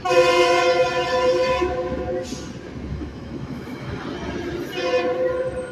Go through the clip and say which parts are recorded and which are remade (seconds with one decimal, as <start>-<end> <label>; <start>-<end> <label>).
0.0-2.9 recorded; 2.9-4.0 remade; 4.0-5.7 recorded